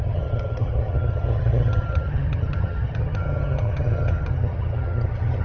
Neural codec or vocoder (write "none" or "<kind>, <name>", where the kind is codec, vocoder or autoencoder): vocoder, HiFi-GAN